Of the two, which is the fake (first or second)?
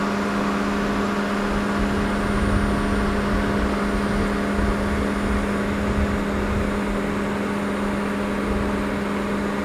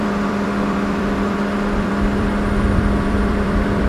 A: second